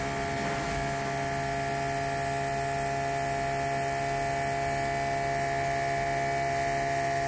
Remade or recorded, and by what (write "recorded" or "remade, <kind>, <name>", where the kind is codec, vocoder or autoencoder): recorded